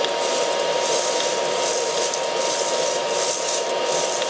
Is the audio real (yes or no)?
yes